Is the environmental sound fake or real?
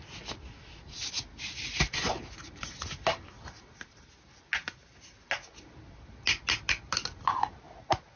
real